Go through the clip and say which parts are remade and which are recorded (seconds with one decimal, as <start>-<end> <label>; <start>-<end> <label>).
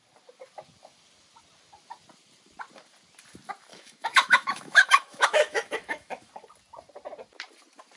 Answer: 0.0-3.7 recorded; 3.7-6.3 remade; 6.3-8.0 recorded